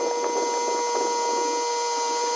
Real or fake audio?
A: real